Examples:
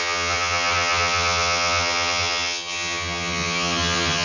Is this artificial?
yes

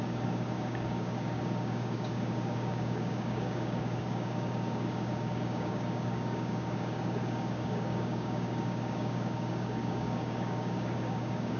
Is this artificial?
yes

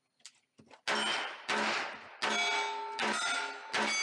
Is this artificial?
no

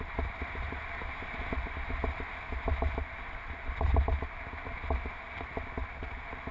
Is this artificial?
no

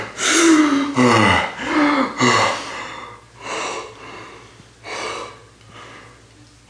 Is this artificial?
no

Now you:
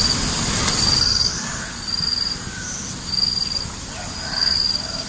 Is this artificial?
no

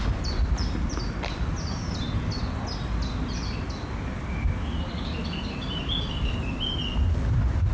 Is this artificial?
no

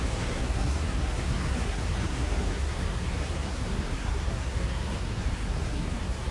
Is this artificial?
yes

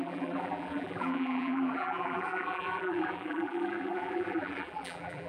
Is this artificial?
yes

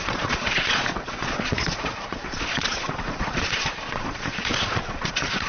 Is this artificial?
yes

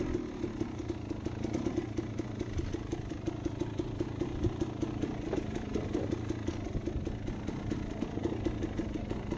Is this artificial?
no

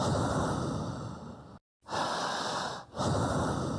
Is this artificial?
no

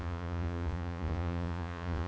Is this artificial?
yes